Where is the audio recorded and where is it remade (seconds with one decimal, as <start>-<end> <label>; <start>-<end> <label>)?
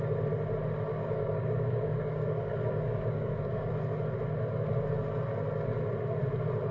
0.0-0.9 recorded; 0.9-3.7 remade; 3.7-6.7 recorded